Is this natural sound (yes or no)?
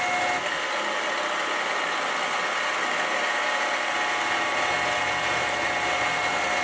yes